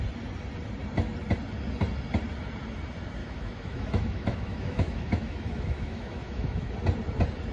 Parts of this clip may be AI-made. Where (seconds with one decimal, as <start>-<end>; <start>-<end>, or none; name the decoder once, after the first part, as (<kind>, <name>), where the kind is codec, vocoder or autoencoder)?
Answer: 3.2-6.7 (autoencoder, DAC-VAE)